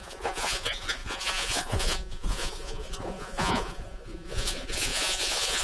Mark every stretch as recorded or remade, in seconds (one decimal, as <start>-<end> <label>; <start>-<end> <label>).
0.0-5.6 remade

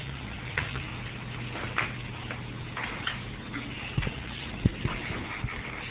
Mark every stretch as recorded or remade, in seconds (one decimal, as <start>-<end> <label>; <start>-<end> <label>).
0.0-0.9 remade; 0.9-4.1 recorded; 4.1-4.7 remade; 4.7-5.9 recorded

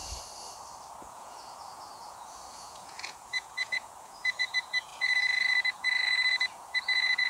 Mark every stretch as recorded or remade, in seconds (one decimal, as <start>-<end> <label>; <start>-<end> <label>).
0.0-1.0 recorded; 1.0-7.3 remade

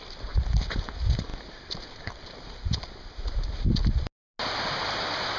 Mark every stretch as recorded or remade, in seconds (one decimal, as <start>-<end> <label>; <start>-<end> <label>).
0.0-5.4 recorded

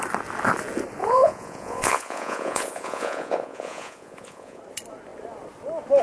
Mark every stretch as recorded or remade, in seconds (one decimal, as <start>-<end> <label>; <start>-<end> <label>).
0.0-1.0 recorded; 1.0-4.6 remade; 4.6-6.0 recorded